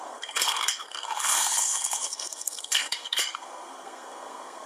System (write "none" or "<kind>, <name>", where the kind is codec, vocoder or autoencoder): codec, SNAC